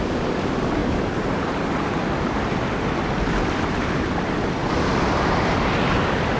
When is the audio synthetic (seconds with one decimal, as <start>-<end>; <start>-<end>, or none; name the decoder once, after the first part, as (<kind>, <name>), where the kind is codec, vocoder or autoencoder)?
0.0-0.8 (vocoder, BigVGAN v2); 3.0-4.6; 6.0-6.4